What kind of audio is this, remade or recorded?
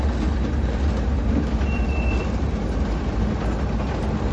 recorded